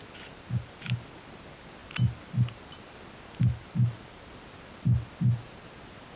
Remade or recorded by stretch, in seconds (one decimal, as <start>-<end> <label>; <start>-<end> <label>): 0.0-6.2 recorded